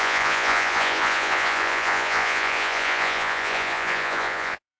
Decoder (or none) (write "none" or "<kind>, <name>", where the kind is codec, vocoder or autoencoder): vocoder, Vocos